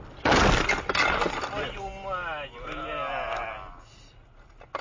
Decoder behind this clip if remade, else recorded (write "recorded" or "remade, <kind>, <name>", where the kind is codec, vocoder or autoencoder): recorded